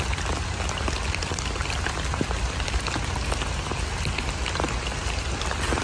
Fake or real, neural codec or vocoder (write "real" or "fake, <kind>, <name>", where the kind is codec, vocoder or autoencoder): real